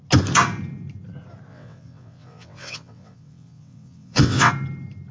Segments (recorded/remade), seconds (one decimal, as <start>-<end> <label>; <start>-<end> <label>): 0.0-1.5 recorded; 1.5-4.5 remade; 4.5-5.1 recorded